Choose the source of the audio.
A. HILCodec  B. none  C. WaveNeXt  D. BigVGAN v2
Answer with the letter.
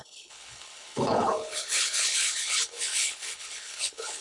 A